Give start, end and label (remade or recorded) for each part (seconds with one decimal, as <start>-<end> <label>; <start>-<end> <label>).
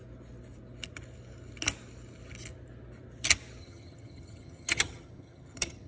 0.0-3.6 recorded; 3.6-5.9 remade